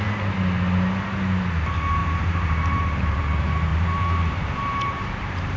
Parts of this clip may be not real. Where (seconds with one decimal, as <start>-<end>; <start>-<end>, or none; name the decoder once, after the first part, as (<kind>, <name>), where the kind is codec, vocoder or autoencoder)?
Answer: 2.0-3.2 (vocoder, BigVGAN v2); 3.7-5.6